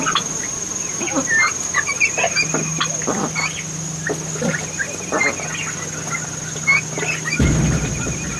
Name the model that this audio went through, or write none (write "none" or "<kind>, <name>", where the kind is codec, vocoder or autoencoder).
none